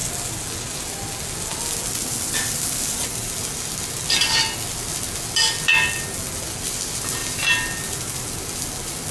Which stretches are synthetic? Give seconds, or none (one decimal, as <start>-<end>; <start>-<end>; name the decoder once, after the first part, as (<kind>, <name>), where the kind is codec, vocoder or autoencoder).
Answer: none